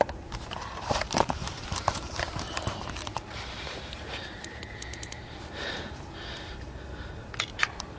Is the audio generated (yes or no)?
yes